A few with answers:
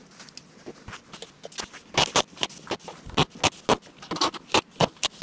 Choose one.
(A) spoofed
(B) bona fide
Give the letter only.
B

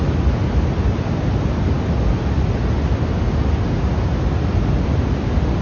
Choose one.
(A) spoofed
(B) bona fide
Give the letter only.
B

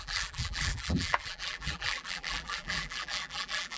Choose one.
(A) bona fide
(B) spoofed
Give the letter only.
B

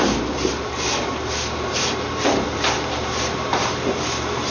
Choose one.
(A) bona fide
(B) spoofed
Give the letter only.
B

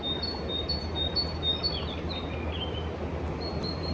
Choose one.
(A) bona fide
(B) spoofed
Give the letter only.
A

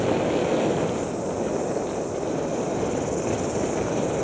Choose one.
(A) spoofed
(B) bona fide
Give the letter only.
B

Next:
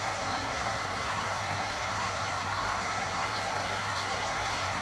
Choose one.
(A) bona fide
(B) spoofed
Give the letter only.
B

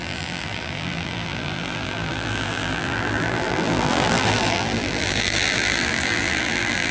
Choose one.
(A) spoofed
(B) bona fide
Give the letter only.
A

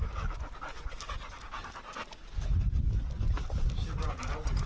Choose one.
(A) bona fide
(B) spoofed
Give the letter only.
A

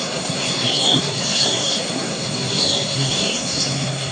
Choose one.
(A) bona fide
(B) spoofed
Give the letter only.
B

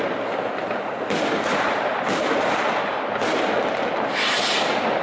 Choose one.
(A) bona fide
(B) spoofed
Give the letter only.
A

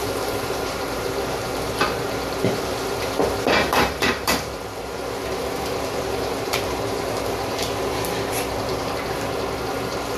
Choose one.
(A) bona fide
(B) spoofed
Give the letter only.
B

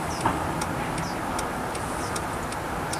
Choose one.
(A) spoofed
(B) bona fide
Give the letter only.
B